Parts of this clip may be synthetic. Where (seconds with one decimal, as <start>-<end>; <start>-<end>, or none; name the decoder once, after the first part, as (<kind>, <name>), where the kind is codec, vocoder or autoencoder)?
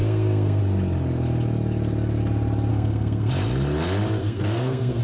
0.0-0.6 (codec, SNAC); 2.7-3.3; 4.2-5.0